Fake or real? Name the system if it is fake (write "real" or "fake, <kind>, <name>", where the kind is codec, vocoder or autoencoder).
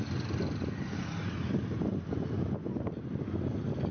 real